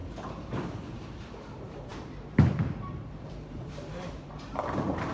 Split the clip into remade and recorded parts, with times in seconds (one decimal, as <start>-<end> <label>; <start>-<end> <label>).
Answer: 0.0-0.7 recorded; 0.7-5.1 remade